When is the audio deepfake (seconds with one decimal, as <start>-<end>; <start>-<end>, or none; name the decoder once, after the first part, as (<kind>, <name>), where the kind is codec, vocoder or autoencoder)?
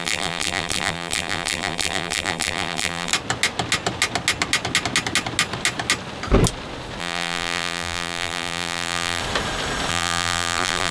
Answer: 0.0-3.1 (vocoder, BigVGAN v2); 7.0-9.2; 9.9-10.9